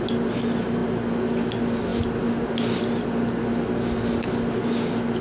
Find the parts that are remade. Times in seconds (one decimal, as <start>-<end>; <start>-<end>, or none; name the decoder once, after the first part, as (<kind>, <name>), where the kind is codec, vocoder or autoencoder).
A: none